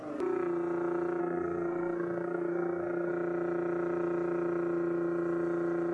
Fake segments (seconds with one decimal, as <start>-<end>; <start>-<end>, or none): 1.2-3.1